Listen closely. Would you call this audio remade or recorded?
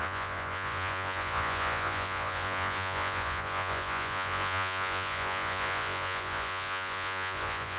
remade